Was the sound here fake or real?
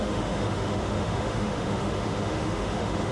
fake